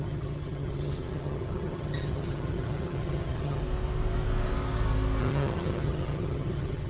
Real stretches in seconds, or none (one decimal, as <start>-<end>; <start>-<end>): 3.6-5.2